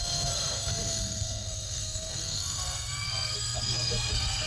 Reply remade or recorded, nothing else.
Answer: remade